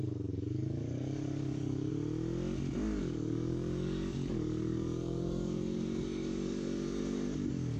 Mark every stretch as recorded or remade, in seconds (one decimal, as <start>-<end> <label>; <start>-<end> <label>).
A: 0.0-1.9 remade; 1.9-3.0 recorded; 3.0-7.8 remade